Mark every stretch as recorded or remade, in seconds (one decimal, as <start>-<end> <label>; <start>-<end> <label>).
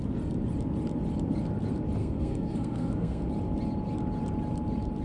0.0-2.0 recorded; 2.0-3.3 remade; 3.3-5.0 recorded